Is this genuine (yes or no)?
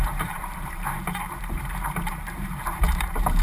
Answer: no